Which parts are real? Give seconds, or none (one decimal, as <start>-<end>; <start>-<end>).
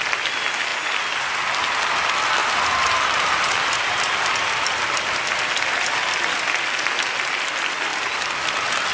0.0-2.4; 3.7-8.9